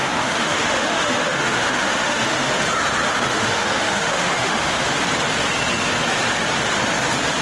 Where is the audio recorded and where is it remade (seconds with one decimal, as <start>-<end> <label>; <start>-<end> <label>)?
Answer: 0.0-2.5 remade; 2.5-3.1 recorded; 3.1-4.8 remade; 4.8-7.4 recorded